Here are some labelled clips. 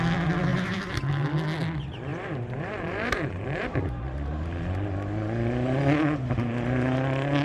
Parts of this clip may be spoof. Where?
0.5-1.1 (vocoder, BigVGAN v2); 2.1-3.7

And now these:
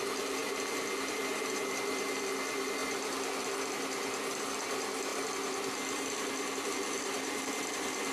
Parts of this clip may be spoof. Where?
0.0-0.4 (vocoder, BigVGAN v2); 1.1-2.8; 4.4-5.1; 6.5-8.1

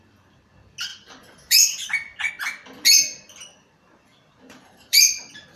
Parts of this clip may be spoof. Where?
0.9-2.3 (vocoder, BigVGAN v2); 3.5-5.6

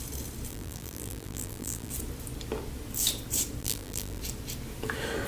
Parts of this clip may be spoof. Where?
0.5-1.9 (vocoder, BigVGAN v2); 3.6-4.2

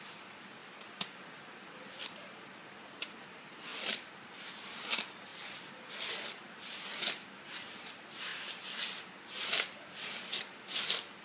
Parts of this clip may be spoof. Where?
none

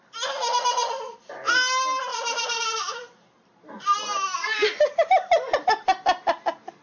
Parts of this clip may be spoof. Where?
2.1-4.4 (vocoder, BigVGAN v2)

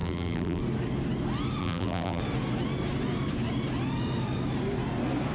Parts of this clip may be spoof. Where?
0.0-0.6 (vocoder, BigVGAN v2); 1.6-2.2

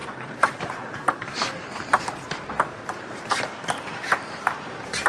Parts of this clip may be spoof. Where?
0.0-1.5 (vocoder, BigVGAN v2); 3.1-5.1